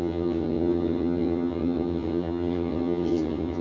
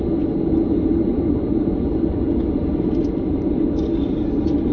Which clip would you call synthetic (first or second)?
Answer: first